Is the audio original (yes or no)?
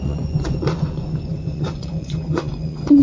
no